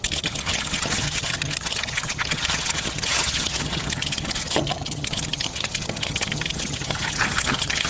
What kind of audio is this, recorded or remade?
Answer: remade